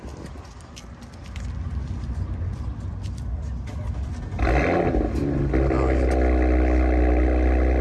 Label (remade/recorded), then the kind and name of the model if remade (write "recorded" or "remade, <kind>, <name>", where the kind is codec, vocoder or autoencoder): recorded